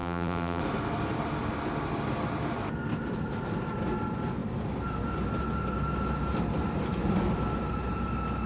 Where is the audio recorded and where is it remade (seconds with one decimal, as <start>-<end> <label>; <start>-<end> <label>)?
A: 0.0-0.6 remade; 0.6-8.5 recorded